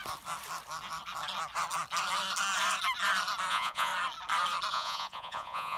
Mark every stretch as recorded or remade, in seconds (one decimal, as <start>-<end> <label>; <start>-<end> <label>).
0.0-3.5 recorded; 3.5-3.9 remade; 3.9-4.7 recorded; 4.7-5.8 remade